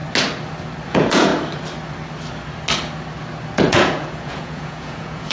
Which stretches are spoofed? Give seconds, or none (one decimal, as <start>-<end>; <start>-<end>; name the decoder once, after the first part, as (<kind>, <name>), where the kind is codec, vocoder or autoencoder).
0.9-1.3 (vocoder, Vocos); 3.7-5.3